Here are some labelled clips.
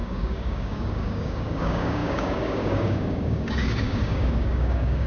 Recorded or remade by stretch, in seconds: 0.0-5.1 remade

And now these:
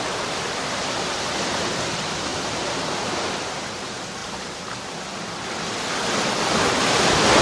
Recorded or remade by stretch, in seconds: 0.0-7.4 recorded

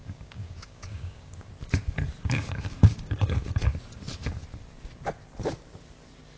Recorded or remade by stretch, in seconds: 0.0-1.5 remade; 1.5-2.2 recorded; 2.2-3.6 remade; 3.6-6.4 recorded

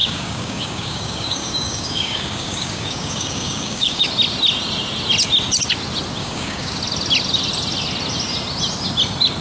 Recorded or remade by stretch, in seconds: 0.0-4.1 remade; 4.1-6.2 recorded; 6.2-6.8 remade; 6.8-9.4 recorded